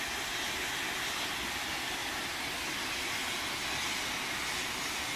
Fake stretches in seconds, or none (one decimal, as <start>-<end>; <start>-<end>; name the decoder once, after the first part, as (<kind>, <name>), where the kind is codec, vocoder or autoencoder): none